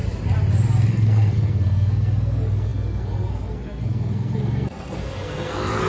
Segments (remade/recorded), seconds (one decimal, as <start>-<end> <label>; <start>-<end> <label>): 0.0-0.9 recorded; 0.9-5.9 remade